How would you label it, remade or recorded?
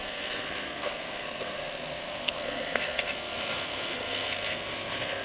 remade